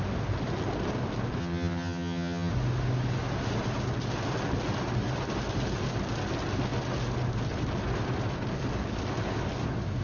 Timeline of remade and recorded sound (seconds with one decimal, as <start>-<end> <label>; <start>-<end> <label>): 0.0-1.4 recorded; 1.4-2.5 remade; 2.5-10.0 recorded